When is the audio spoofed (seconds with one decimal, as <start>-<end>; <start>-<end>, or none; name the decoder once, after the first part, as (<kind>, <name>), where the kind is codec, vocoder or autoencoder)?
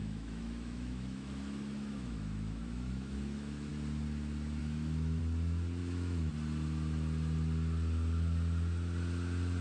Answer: 0.0-3.7 (autoencoder, DAC-VAE); 4.6-5.2; 5.8-6.3